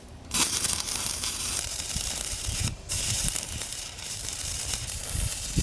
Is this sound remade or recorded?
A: remade